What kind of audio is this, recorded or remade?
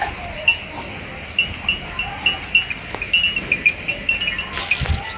recorded